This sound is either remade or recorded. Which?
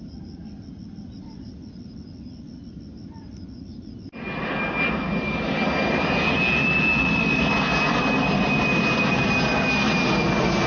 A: recorded